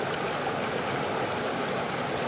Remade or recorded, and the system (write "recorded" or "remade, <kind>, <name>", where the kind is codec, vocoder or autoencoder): recorded